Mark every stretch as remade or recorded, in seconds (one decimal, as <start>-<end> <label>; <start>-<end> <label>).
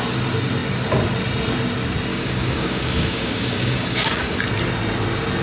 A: 0.0-2.1 recorded; 2.1-4.4 remade; 4.4-5.4 recorded